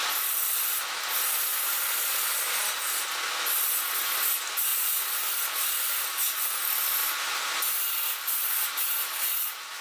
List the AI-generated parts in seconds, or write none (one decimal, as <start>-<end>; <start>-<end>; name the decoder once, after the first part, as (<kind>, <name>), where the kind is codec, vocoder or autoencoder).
1.5-2.7 (vocoder, BigVGAN v2); 4.7-6.4; 7.0-8.5